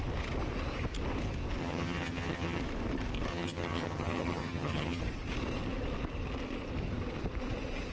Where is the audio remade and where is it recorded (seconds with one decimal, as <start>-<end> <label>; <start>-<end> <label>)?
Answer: 0.0-1.6 recorded; 1.6-2.6 remade; 2.6-3.3 recorded; 3.3-5.0 remade; 5.0-7.9 recorded